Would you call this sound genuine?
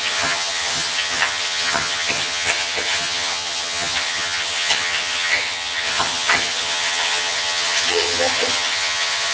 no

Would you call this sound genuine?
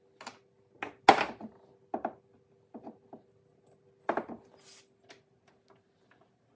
yes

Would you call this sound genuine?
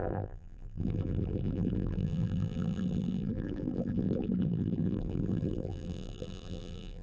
no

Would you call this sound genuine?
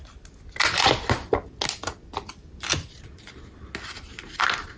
yes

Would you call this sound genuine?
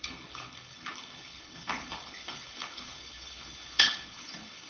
no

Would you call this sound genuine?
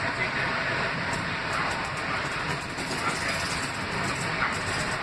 yes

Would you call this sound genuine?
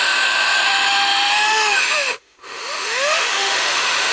no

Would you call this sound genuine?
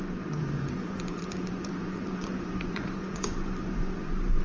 no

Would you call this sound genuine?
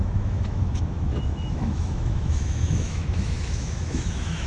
no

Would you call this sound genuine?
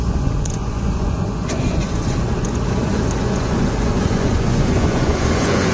no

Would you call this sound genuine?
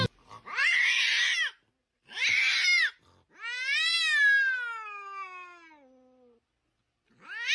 yes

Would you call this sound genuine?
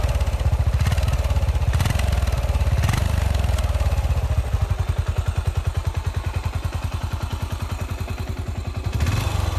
yes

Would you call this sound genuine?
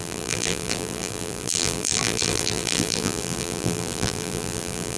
no